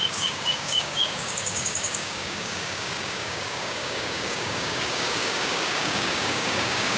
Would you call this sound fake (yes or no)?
yes